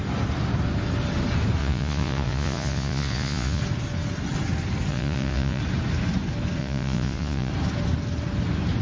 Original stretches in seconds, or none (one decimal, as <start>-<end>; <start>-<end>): 0.0-1.6; 3.6-4.9; 5.6-6.6; 7.5-8.8